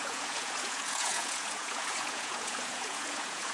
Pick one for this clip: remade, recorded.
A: remade